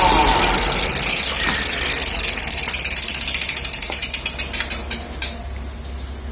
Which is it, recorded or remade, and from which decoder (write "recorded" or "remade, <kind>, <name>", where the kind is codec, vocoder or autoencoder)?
recorded